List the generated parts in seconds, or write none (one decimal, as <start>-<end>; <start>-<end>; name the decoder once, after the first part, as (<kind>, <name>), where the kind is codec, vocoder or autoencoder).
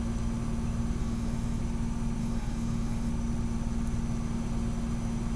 1.0-1.6 (autoencoder, DAC-VAE); 2.2-3.1